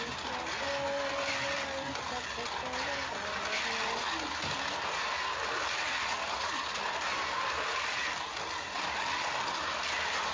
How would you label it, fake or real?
real